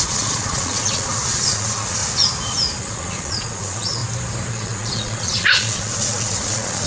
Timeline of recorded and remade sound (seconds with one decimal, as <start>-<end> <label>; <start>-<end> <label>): 0.0-2.0 remade; 2.0-2.8 recorded; 2.8-4.0 remade; 4.0-4.5 recorded; 4.5-6.9 remade